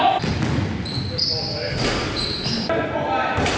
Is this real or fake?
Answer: real